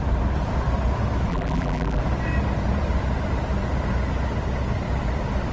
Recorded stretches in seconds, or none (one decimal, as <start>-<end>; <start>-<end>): 0.0-1.3; 2.0-5.5